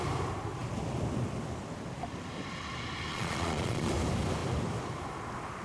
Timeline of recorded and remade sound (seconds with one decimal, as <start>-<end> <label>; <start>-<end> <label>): 0.0-3.1 recorded; 3.1-3.9 remade; 3.9-5.6 recorded